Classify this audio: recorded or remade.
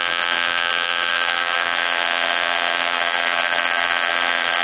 remade